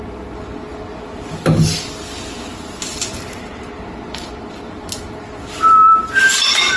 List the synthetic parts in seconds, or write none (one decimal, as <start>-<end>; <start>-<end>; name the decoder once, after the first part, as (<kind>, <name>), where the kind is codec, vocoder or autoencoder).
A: 2.5-3.5 (vocoder, BigVGAN v2)